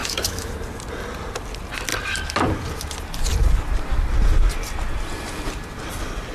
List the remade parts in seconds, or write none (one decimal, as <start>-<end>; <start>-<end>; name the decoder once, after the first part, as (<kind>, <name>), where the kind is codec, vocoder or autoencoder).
0.0-0.5 (autoencoder, DAC-VAE)